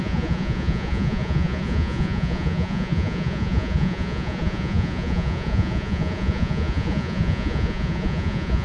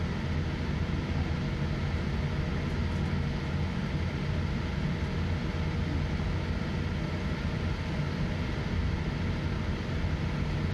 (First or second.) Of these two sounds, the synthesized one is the first